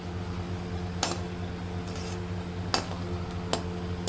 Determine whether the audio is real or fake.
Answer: real